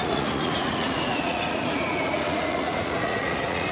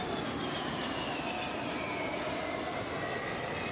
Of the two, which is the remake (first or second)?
first